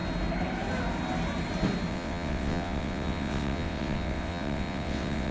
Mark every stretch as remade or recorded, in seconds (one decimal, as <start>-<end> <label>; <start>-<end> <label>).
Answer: 0.0-1.9 recorded; 1.9-5.3 remade